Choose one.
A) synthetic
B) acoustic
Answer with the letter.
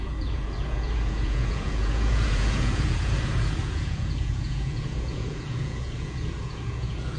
A